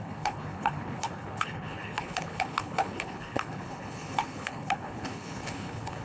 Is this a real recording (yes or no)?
no